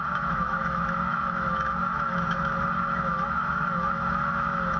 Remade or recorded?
remade